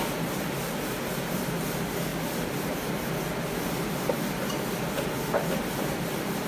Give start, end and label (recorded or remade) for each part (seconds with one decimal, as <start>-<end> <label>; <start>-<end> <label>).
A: 0.0-6.5 recorded